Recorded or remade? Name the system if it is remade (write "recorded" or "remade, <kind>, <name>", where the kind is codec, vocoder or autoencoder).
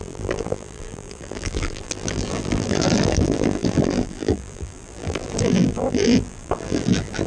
remade, vocoder, BigVGAN v2